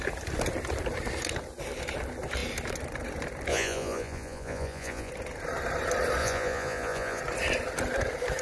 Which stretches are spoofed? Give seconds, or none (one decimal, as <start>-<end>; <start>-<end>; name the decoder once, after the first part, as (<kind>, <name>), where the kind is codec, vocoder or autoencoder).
3.5-5.1 (vocoder, Vocos); 6.2-7.2